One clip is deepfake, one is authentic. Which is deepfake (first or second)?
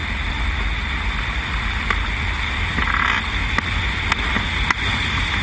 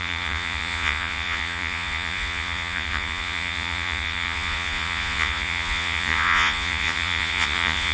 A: second